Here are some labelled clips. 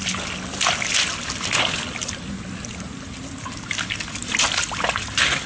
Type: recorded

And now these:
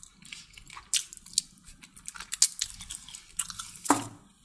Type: recorded